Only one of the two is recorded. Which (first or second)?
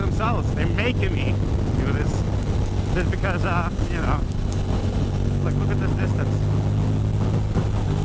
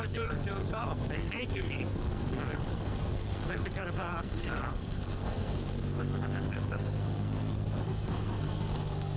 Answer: first